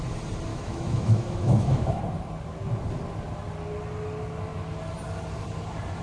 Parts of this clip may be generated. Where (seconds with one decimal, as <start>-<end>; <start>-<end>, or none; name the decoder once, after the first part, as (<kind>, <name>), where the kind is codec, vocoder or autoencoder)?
0.5-2.0 (autoencoder, DAC-VAE)